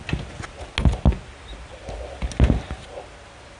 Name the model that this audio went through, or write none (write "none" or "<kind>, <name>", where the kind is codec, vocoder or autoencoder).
none